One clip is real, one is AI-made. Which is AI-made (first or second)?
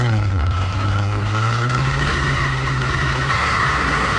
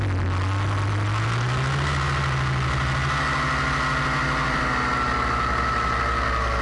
first